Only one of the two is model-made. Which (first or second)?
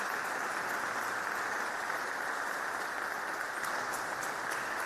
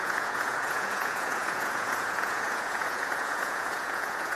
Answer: second